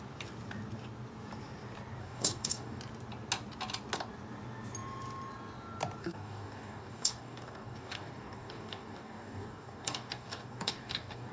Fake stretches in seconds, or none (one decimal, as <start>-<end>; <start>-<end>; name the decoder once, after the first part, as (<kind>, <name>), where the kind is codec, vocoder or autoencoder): 2.0-2.8 (codec, DAC); 6.0-11.3